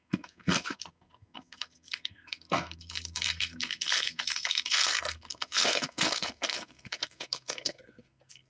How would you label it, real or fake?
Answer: fake